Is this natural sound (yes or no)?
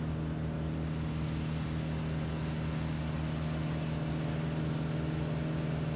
yes